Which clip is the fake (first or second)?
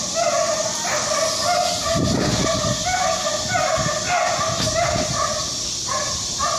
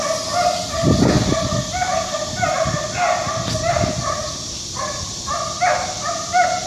second